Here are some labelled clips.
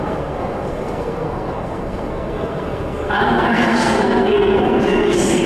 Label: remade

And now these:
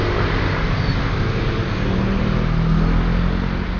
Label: recorded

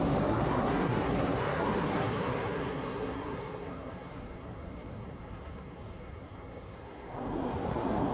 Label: remade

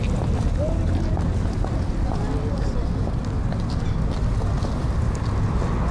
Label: recorded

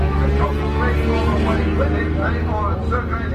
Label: recorded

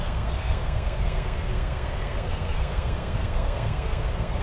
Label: remade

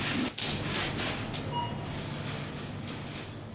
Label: recorded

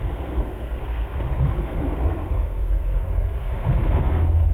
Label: remade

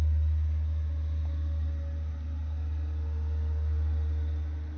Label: recorded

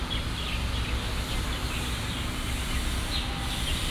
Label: recorded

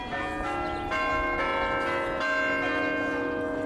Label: recorded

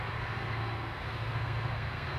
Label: remade